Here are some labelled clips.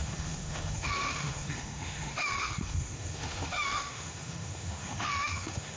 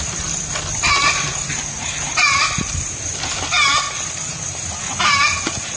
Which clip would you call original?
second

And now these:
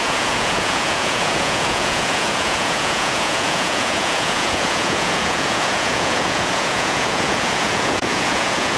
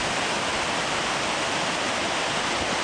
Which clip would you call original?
second